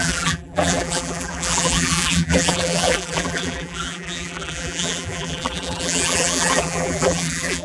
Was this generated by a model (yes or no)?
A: yes